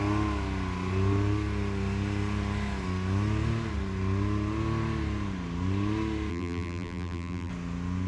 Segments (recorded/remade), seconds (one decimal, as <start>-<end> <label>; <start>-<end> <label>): 0.0-6.3 recorded; 6.3-7.5 remade; 7.5-8.1 recorded